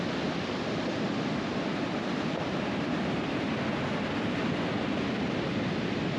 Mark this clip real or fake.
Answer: real